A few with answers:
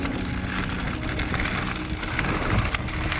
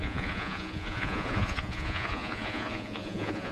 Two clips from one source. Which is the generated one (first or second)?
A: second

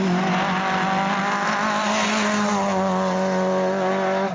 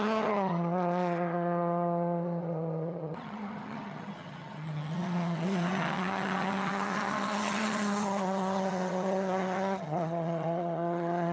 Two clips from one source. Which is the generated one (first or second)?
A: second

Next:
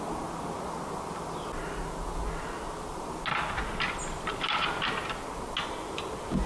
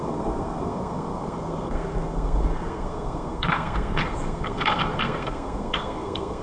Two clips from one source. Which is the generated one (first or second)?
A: second